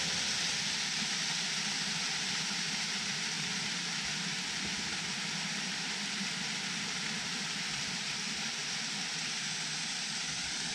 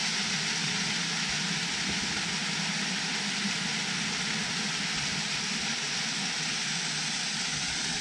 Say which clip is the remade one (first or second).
first